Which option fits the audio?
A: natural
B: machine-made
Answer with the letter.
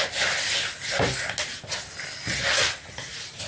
A